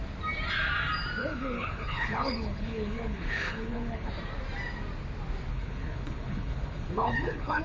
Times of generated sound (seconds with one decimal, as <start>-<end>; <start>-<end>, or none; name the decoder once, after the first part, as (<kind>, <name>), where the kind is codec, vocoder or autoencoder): 1.2-4.1 (codec, HILCodec); 5.5-7.6